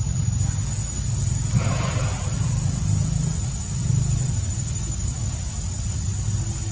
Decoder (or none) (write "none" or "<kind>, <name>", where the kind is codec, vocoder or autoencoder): none